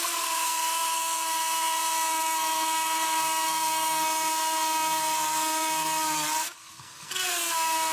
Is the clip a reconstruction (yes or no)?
yes